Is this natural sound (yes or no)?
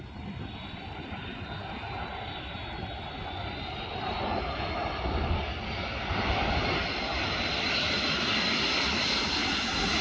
yes